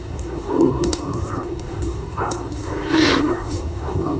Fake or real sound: fake